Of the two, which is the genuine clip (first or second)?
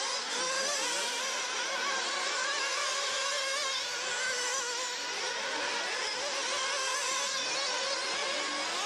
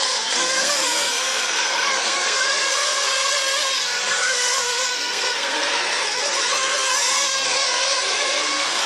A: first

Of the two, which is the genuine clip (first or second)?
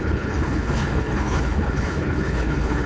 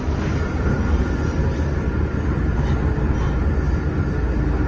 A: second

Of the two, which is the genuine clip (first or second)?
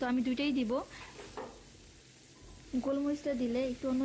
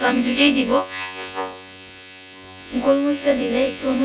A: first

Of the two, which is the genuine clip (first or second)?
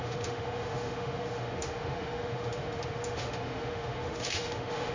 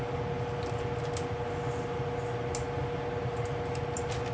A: second